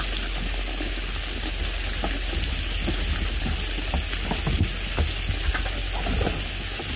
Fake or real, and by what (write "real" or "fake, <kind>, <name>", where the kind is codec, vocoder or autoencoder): real